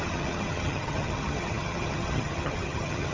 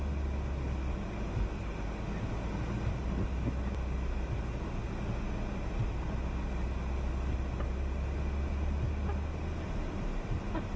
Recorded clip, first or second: second